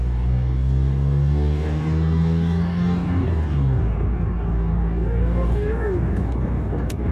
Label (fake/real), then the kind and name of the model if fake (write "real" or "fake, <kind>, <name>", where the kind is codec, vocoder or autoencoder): fake, codec, DAC